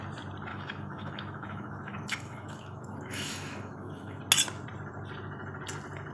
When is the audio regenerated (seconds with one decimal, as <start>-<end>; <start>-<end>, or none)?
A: 0.5-4.2